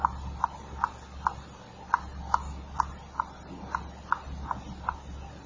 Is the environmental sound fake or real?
real